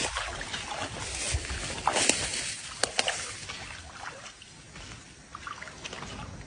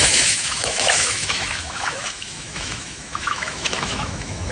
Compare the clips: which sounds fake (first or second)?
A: second